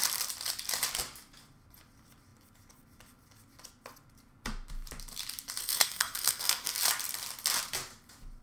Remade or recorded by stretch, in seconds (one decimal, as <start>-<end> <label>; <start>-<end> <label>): 0.0-5.6 recorded; 5.6-6.8 remade; 6.8-8.4 recorded